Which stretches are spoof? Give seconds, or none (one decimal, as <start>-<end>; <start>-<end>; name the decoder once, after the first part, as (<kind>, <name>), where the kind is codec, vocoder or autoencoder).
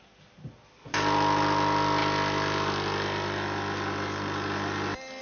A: none